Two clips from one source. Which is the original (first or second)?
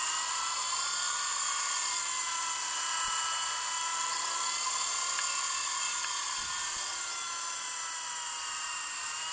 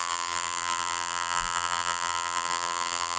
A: first